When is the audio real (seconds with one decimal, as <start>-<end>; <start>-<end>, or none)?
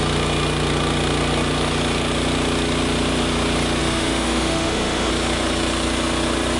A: 0.0-3.8; 5.1-6.6